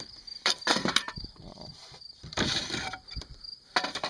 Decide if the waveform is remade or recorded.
remade